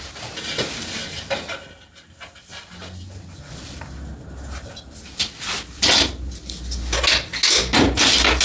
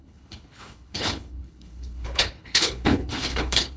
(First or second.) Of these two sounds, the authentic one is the first